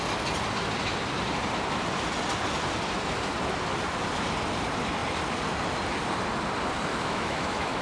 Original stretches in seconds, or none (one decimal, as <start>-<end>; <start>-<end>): 0.0-6.9